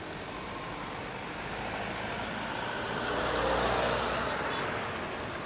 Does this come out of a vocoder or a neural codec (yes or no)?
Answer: no